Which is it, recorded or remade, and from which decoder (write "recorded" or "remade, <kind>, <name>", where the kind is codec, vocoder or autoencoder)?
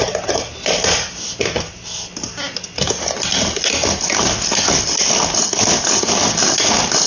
recorded